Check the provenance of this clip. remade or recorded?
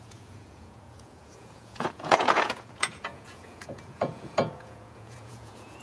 remade